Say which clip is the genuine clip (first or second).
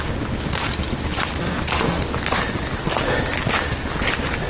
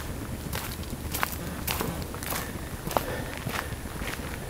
first